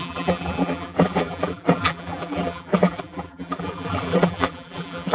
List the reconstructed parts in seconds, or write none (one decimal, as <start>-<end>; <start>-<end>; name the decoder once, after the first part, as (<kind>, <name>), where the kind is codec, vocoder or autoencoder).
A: 0.0-5.1 (vocoder, BigVGAN v2)

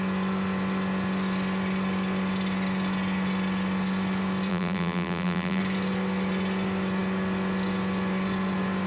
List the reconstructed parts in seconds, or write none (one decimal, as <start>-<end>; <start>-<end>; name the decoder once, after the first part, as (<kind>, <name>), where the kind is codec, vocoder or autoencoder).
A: 4.5-5.6 (vocoder, BigVGAN v2)

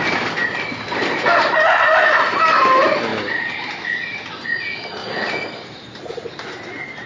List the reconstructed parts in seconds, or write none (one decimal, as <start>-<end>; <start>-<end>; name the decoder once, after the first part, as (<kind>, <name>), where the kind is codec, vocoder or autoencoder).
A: 0.4-2.4 (vocoder, BigVGAN v2); 3.1-4.3; 5.0-6.0

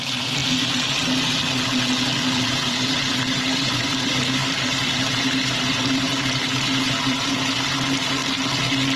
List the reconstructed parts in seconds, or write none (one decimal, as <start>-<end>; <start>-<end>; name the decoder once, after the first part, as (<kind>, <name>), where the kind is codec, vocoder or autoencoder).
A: 0.0-0.4 (vocoder, BigVGAN v2); 2.4-8.2

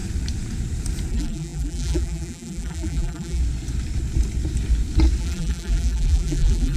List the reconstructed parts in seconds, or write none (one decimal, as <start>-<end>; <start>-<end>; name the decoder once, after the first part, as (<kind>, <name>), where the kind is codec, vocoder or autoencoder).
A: 1.1-3.4 (vocoder, BigVGAN v2); 5.2-6.8